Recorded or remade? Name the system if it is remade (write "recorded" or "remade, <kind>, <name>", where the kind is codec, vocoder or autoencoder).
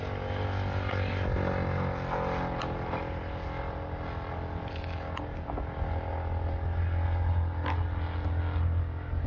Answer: recorded